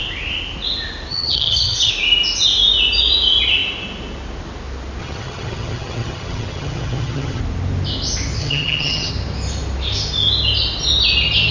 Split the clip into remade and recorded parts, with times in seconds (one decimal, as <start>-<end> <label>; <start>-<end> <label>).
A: 0.0-1.1 recorded; 1.1-1.9 remade; 1.9-5.0 recorded; 5.0-7.4 remade; 7.4-8.4 recorded; 8.4-9.1 remade; 9.1-11.5 recorded